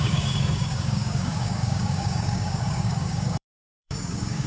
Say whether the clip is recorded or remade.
remade